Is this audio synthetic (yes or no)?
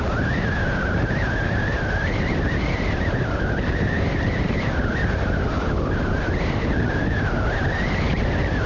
yes